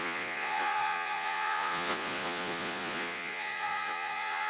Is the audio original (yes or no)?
no